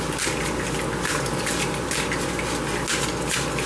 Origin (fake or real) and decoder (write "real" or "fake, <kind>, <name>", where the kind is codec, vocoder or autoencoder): real